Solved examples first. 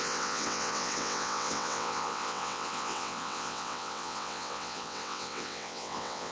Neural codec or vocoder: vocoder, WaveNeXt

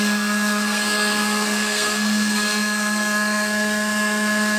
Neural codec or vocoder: codec, SNAC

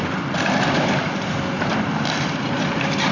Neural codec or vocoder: none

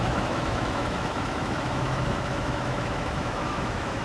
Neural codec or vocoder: autoencoder, DAC-VAE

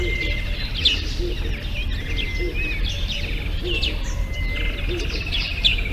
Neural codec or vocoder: none